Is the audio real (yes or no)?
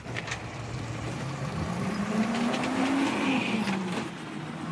yes